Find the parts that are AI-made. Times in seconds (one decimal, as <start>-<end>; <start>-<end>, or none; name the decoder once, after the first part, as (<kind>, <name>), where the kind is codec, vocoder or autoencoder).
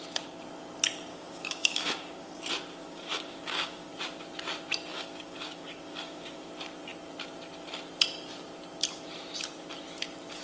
1.1-2.4 (codec, DAC); 2.8-3.9; 4.9-6.5